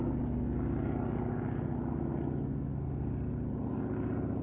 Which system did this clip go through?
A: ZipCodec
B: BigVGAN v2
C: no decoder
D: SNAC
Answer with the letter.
C